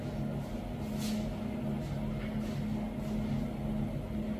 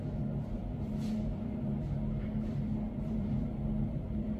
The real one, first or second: first